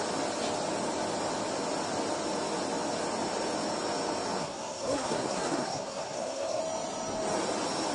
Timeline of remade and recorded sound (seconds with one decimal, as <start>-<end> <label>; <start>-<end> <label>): 0.0-4.4 recorded; 4.4-6.6 remade; 6.6-7.9 recorded